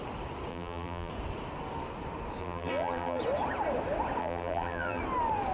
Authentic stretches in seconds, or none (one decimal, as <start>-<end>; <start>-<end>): 0.0-0.5; 1.1-2.4; 3.2-4.2; 5.0-5.5